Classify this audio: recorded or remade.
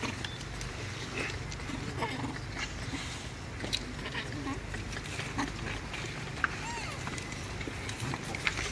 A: recorded